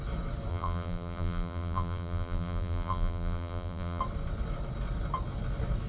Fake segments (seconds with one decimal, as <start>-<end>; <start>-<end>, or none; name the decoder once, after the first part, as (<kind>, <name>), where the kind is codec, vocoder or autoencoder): 0.5-4.0 (vocoder, BigVGAN v2)